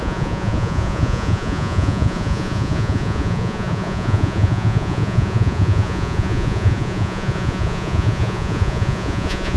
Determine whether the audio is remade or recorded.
remade